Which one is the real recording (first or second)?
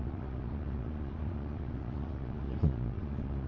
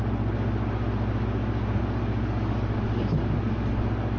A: second